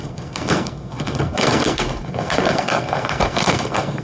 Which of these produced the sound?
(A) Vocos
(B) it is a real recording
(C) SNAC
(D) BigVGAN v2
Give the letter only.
C